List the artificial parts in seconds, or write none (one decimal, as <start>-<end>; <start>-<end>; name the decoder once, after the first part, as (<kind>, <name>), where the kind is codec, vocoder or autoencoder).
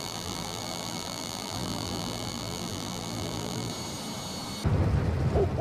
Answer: 0.0-3.7 (vocoder, BigVGAN v2)